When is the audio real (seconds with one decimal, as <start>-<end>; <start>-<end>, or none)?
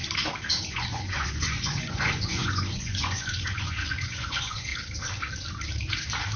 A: 0.0-0.7; 4.7-6.4